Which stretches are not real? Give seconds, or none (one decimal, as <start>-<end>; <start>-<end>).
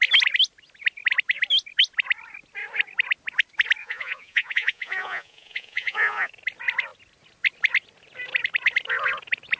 3.8-6.3